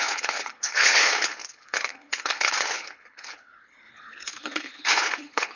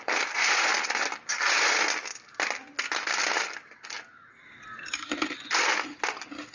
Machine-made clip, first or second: first